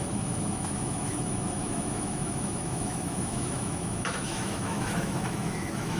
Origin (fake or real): fake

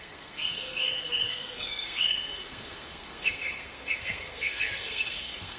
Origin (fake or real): fake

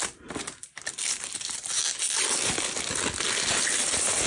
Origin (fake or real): real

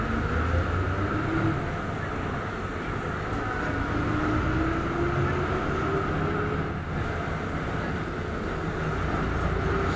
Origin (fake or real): real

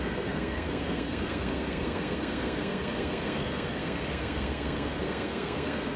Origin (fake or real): fake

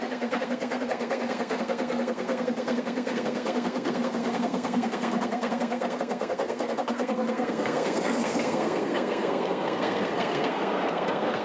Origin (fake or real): fake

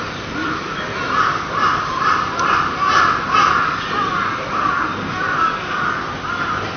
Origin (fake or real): real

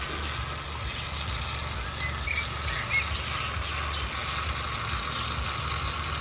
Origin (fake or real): real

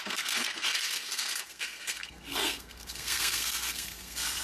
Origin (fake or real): fake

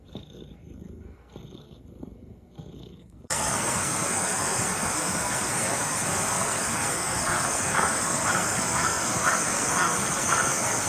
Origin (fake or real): fake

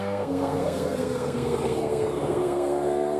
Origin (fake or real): fake